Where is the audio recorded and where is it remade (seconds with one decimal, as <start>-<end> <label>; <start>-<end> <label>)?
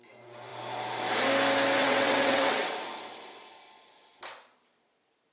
0.0-1.8 recorded; 1.8-2.7 remade; 2.7-5.3 recorded